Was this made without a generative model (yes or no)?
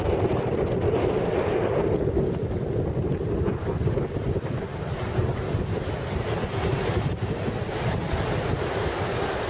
yes